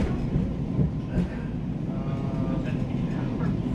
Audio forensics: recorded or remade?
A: recorded